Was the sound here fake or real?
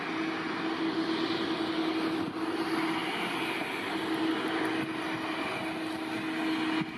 real